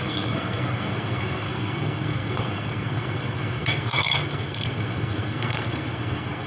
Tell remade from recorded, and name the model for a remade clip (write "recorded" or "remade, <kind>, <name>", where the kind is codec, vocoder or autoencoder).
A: remade, codec, SNAC